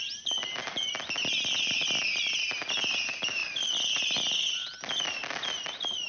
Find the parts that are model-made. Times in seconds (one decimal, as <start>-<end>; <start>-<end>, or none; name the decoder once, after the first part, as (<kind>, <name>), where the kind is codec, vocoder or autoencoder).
none